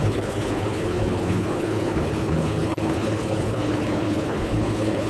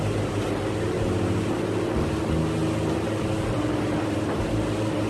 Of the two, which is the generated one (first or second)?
first